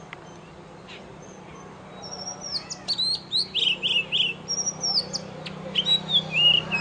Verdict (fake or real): real